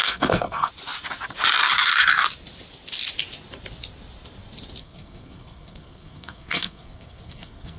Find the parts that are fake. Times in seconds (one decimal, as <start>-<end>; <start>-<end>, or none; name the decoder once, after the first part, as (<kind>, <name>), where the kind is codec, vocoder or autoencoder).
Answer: 0.0-0.7 (codec, SNAC); 4.8-7.8